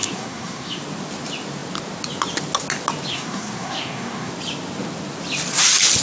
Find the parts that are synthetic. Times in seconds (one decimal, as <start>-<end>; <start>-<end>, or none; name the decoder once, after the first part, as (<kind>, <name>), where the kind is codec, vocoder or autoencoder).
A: 0.0-0.8 (codec, SNAC); 3.1-4.3